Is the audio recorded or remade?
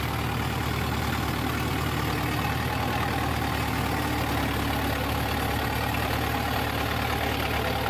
recorded